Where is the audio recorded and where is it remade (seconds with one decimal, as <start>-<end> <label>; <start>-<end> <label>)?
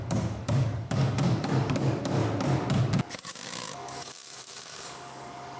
0.0-2.2 remade; 2.2-2.8 recorded; 2.8-5.6 remade